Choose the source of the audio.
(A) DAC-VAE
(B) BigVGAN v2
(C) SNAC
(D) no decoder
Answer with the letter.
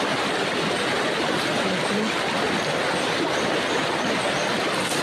D